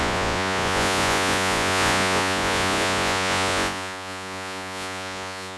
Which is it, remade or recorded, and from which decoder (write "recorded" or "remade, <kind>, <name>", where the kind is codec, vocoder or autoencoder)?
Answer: remade, vocoder, Vocos